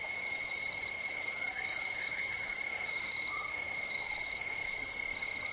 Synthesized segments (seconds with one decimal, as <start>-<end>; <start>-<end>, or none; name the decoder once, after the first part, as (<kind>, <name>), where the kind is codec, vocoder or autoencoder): 0.0-4.9 (autoencoder, DAC-VAE)